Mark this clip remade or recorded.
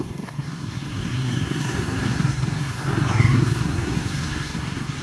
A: remade